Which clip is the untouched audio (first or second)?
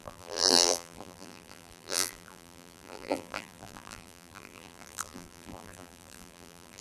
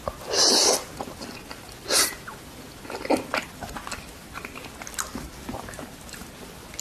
second